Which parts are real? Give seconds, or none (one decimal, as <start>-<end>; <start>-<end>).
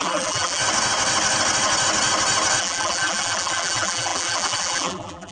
0.6-2.6